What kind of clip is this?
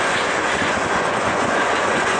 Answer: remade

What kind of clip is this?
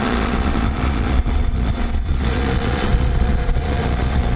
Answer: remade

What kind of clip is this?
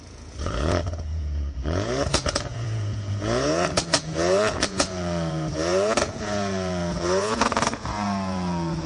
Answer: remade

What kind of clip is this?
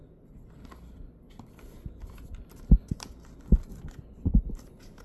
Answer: recorded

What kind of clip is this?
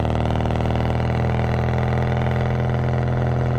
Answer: recorded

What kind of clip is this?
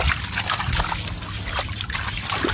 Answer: recorded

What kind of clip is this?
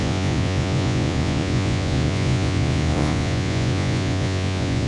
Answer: remade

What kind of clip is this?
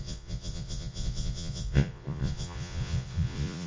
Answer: remade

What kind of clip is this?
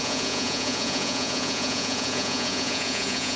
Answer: remade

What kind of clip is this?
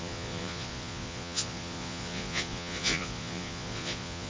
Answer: remade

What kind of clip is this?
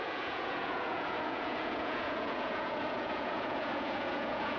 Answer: remade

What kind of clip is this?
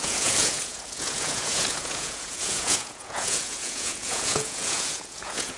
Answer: remade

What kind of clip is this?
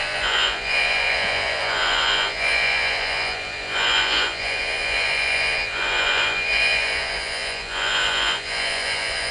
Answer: remade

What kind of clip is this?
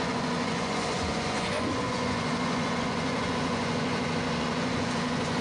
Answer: remade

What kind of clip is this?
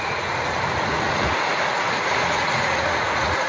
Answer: remade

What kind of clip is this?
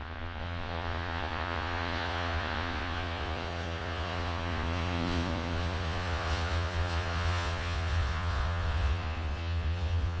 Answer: remade